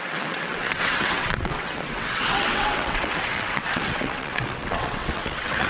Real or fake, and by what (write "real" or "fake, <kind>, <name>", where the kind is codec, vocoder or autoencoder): fake, vocoder, WaveNeXt